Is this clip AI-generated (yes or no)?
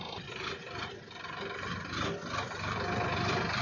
no